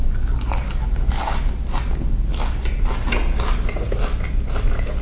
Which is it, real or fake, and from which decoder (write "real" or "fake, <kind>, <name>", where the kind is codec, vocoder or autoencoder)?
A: real